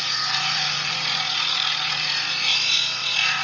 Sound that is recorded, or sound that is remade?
remade